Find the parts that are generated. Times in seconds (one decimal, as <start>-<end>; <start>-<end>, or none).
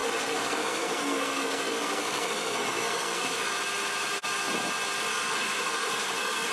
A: 0.0-3.5; 5.1-6.5